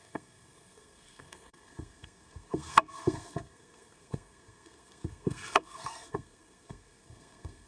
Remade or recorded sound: remade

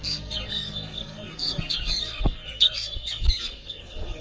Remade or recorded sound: remade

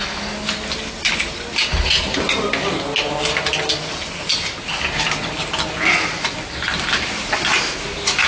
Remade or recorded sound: recorded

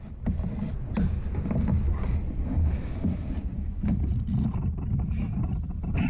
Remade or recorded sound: recorded